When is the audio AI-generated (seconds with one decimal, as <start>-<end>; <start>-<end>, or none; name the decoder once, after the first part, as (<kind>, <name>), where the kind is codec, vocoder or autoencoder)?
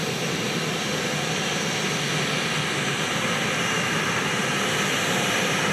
0.0-3.4 (vocoder, BigVGAN v2)